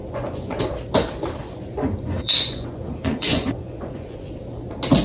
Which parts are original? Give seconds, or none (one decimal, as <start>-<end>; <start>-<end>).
0.6-1.4; 4.4-5.0